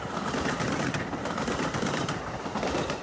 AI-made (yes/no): yes